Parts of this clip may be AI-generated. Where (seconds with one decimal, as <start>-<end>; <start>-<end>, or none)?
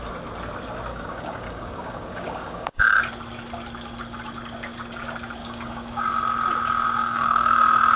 0.9-3.1; 5.4-6.0; 7.0-7.6